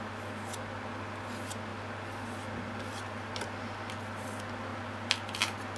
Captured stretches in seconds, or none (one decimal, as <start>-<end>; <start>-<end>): 0.0-5.8

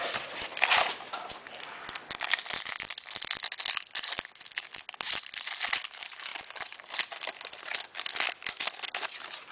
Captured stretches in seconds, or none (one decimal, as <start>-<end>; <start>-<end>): 0.0-9.5